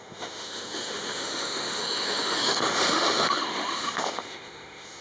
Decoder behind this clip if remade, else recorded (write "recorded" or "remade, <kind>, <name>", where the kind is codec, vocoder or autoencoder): remade, autoencoder, DAC-VAE